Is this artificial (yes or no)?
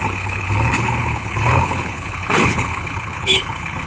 yes